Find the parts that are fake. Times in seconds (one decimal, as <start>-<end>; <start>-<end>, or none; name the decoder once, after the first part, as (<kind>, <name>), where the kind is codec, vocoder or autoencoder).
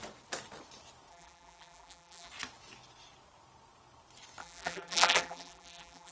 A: 1.1-2.3 (vocoder, BigVGAN v2); 4.4-6.1